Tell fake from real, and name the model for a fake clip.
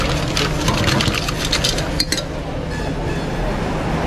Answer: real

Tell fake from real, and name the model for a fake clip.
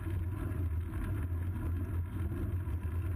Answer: real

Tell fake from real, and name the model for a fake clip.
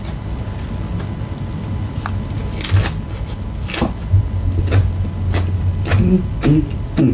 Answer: real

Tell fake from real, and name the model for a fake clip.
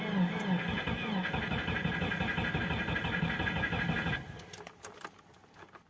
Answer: real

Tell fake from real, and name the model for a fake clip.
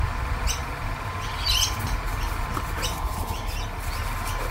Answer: real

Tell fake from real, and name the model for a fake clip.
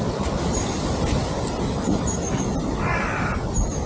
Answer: fake, vocoder, BigVGAN v2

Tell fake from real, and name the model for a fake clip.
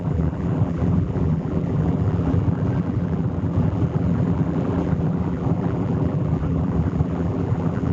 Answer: fake, vocoder, BigVGAN v2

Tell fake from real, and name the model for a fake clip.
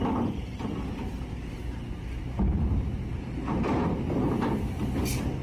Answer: real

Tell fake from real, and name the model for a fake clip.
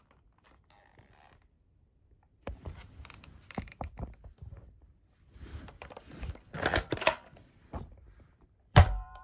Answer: fake, vocoder, BigVGAN v2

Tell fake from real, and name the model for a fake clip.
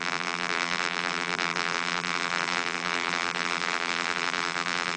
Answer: fake, vocoder, BigVGAN v2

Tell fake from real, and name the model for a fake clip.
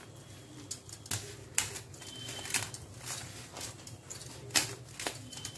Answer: real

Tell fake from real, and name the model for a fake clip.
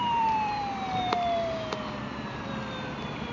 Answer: fake, vocoder, BigVGAN v2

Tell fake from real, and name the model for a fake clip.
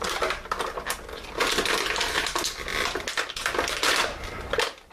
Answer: real